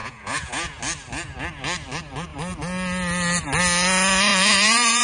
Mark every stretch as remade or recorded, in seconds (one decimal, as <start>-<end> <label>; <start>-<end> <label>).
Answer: 0.0-0.8 remade; 0.8-4.3 recorded; 4.3-5.0 remade